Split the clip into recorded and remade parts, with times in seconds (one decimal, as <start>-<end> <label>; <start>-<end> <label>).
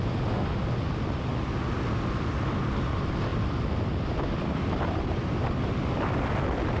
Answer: 0.0-6.8 recorded